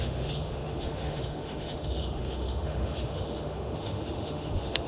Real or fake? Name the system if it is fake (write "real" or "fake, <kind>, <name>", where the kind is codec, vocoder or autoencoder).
fake, autoencoder, DAC-VAE